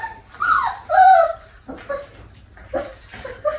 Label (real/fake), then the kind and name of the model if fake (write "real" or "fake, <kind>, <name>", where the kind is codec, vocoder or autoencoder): real